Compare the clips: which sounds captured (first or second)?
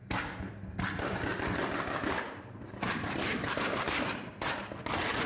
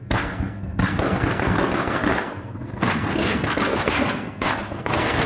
first